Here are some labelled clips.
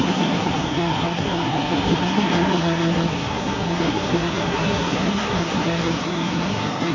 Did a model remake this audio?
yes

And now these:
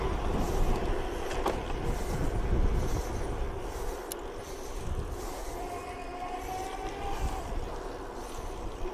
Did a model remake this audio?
no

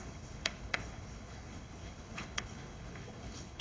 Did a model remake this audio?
yes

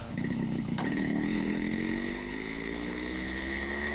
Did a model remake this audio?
yes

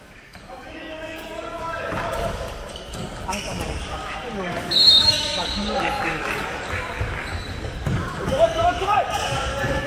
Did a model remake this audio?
yes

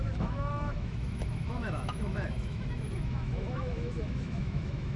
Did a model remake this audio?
yes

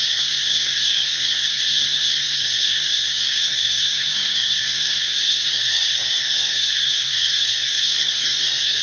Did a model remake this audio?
yes